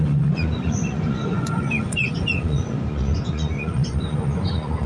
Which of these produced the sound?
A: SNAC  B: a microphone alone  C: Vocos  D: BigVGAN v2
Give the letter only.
C